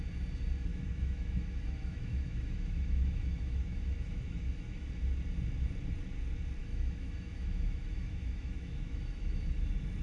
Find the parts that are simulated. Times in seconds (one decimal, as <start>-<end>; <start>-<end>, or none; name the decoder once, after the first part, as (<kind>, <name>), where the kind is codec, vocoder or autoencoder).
0.7-4.9 (autoencoder, DAC-VAE); 6.6-9.4